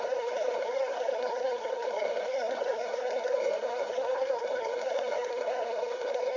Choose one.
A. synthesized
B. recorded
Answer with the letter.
A